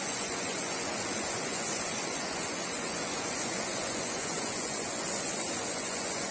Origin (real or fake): fake